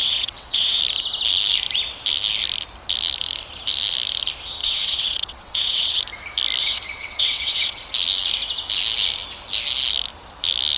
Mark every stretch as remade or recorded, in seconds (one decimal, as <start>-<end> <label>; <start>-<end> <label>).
0.0-0.8 remade; 0.8-4.6 recorded; 4.6-6.0 remade; 6.0-6.6 recorded; 6.6-7.8 remade; 7.8-10.8 recorded